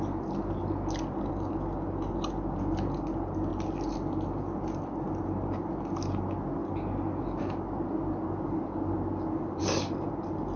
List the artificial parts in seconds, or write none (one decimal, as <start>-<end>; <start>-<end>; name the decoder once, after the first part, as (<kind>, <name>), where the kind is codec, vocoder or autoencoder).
none